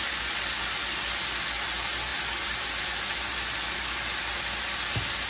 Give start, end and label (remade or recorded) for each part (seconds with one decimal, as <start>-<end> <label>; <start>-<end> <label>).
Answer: 0.0-5.3 recorded